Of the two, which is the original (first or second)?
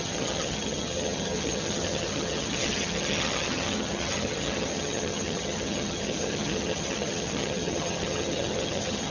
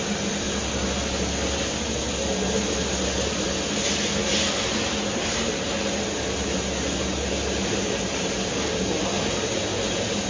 second